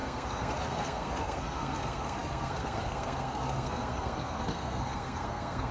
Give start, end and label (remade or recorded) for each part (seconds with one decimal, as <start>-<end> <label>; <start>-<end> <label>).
0.0-5.7 remade